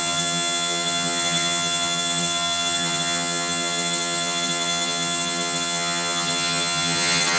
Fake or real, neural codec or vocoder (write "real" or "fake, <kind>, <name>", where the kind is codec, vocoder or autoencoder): fake, vocoder, HiFi-GAN